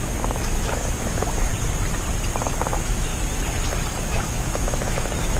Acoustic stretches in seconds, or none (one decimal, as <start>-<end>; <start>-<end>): 1.5-2.4; 3.1-4.0